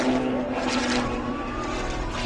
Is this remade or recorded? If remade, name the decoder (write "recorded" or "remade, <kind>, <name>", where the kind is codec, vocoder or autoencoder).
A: recorded